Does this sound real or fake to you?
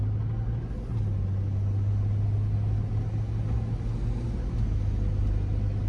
real